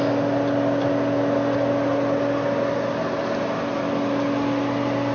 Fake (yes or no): no